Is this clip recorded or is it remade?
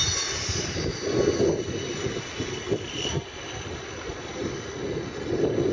recorded